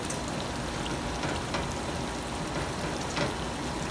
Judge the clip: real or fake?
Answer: real